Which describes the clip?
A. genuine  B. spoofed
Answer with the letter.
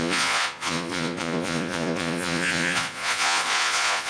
B